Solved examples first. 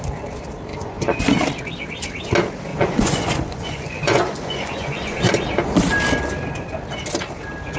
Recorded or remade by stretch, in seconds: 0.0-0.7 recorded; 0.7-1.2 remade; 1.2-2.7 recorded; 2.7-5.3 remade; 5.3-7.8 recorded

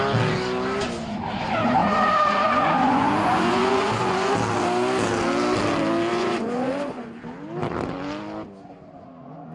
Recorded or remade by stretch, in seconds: 0.0-1.8 recorded; 1.8-4.3 remade; 4.3-6.1 recorded; 6.1-7.1 remade; 7.1-9.5 recorded

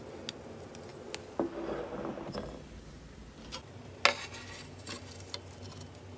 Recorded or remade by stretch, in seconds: 0.0-6.2 recorded

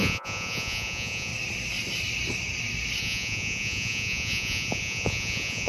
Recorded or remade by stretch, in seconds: 0.0-1.3 remade; 1.3-3.0 recorded; 3.0-5.7 remade